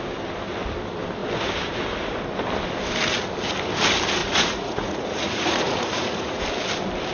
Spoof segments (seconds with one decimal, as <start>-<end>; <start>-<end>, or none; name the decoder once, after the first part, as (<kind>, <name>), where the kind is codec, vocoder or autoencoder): 4.2-6.4 (vocoder, Vocos)